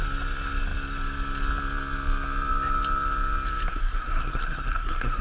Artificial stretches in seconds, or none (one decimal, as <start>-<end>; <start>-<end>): 3.7-5.2